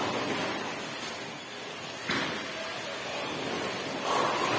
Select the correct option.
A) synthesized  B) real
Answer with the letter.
B